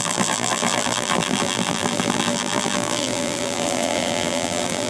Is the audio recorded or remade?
remade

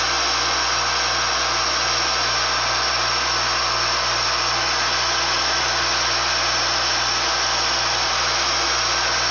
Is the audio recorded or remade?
recorded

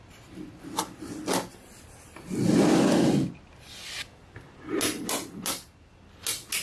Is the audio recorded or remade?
recorded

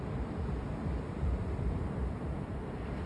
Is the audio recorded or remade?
recorded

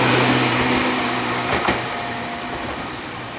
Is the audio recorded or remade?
remade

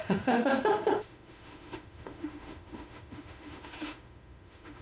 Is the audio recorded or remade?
remade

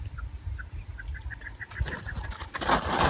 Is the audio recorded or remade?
recorded